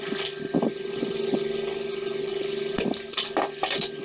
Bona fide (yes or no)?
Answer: yes